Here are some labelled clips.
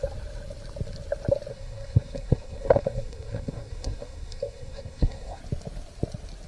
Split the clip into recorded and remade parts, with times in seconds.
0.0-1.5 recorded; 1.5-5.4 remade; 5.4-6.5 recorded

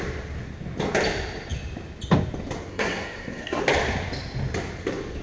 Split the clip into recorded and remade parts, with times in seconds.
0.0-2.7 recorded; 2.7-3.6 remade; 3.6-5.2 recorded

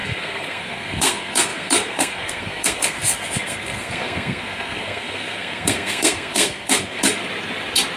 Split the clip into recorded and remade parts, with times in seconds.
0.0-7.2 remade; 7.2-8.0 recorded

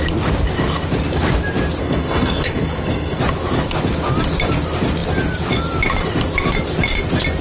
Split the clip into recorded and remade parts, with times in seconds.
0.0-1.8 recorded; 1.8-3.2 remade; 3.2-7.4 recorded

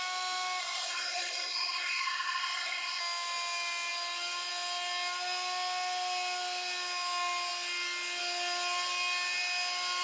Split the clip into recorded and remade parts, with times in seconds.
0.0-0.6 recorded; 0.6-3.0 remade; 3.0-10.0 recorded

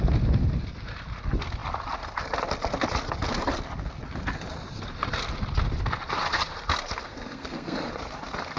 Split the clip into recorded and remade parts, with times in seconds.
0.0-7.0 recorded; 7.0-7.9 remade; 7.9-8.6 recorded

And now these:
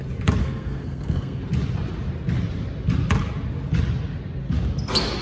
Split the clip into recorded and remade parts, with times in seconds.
0.0-0.4 recorded; 0.4-1.4 remade; 1.4-5.2 recorded